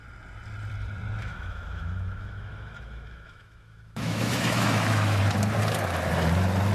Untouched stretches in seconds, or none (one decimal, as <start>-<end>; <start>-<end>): 0.0-1.2; 5.2-6.7